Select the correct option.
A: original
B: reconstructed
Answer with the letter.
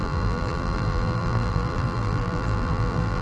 B